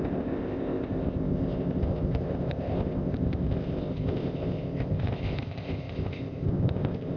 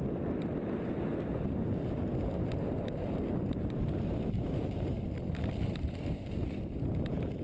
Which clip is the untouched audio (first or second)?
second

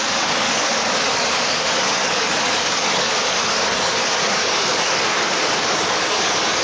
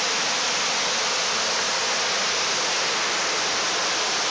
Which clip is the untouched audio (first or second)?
second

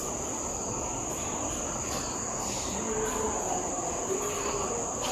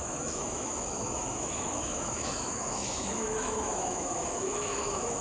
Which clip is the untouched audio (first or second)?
first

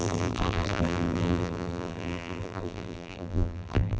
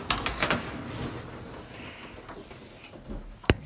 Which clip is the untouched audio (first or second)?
second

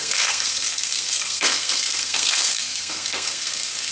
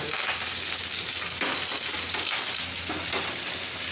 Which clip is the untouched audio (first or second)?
second